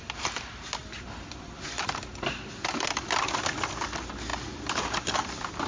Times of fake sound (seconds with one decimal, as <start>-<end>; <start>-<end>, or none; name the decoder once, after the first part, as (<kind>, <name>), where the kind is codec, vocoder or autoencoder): 0.8-3.0 (vocoder, BigVGAN v2); 4.3-5.7